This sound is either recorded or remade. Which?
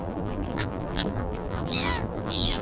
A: remade